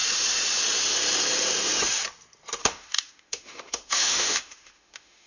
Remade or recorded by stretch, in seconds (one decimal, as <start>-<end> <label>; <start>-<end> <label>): 0.0-2.6 recorded; 2.6-5.3 remade